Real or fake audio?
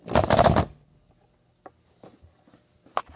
real